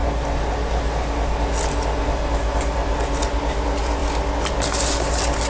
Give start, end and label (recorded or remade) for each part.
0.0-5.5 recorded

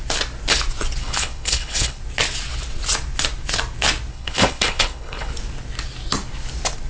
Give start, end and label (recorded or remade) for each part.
0.0-1.0 recorded; 1.0-2.0 remade; 2.0-4.1 recorded; 4.1-5.3 remade; 5.3-6.9 recorded

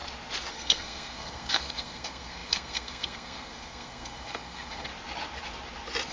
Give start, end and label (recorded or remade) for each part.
0.0-0.5 recorded; 0.5-4.9 remade; 4.9-6.1 recorded